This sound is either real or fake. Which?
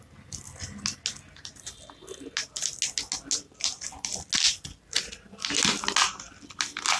real